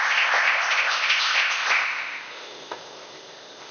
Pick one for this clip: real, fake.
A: fake